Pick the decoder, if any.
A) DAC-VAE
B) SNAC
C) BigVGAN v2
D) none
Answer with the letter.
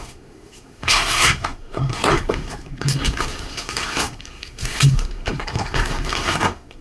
B